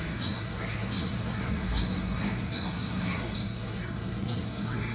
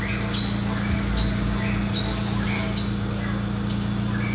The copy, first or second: first